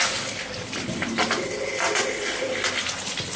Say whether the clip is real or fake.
real